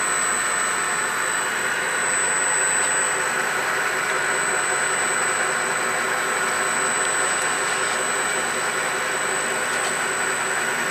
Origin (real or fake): real